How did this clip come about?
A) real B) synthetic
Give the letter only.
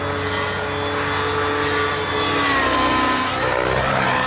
A